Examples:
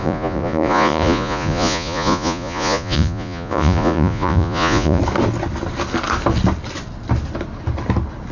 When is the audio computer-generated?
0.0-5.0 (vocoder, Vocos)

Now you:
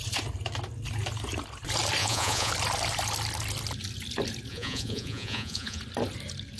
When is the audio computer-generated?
2.0-2.5 (vocoder, Vocos); 4.5-5.8